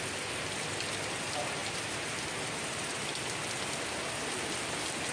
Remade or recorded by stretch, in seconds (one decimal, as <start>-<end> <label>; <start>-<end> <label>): 0.0-5.1 recorded